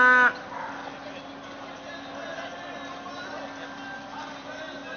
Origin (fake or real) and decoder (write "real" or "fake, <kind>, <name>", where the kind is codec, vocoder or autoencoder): real